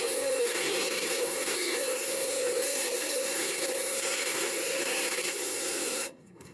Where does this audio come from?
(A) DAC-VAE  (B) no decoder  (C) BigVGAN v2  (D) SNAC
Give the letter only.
D